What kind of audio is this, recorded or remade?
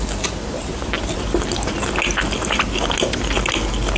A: recorded